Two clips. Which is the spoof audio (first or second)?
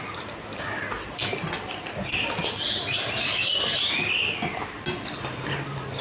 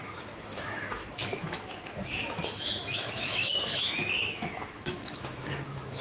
second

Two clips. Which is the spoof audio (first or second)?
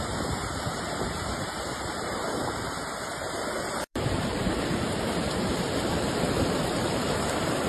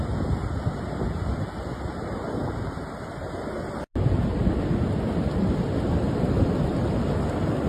first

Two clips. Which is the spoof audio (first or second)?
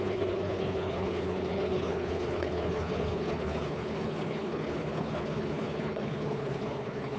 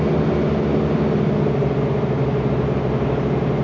first